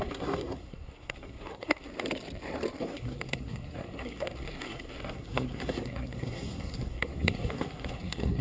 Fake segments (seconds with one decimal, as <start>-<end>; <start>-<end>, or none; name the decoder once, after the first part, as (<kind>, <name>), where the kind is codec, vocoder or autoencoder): 0.0-1.9 (codec, SNAC); 2.8-8.4